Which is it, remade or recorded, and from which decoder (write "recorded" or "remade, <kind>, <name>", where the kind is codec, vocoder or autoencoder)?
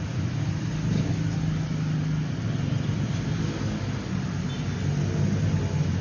recorded